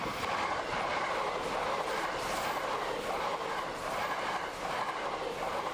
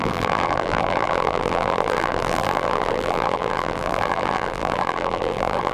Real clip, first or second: first